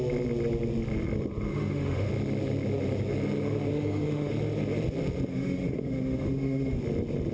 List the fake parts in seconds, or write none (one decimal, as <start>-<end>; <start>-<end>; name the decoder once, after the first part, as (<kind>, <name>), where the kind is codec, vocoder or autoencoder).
1.5-2.1 (autoencoder, DAC-VAE); 3.7-4.3; 5.3-6.8